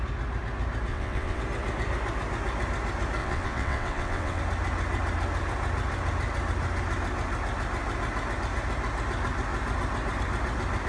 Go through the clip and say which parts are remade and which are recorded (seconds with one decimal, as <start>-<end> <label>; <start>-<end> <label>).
0.0-0.9 recorded; 0.9-1.4 remade; 1.4-3.2 recorded; 3.2-4.4 remade; 4.4-10.9 recorded